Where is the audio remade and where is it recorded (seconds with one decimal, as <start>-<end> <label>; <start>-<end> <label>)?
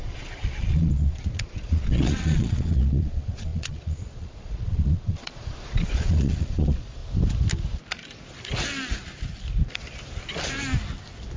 0.0-7.0 remade; 7.0-11.4 recorded